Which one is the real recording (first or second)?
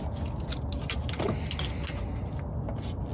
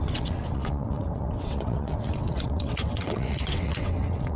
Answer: first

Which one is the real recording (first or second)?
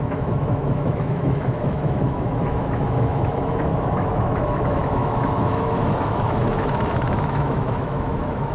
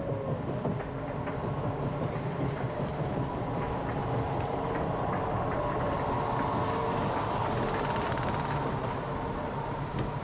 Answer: second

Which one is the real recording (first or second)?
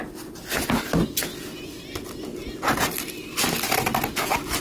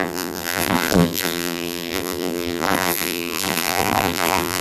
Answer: first